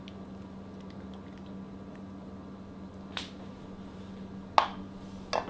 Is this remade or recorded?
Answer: recorded